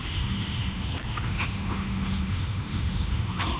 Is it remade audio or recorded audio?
remade